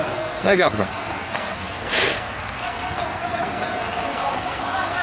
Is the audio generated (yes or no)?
yes